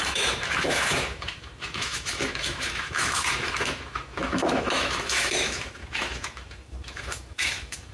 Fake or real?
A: fake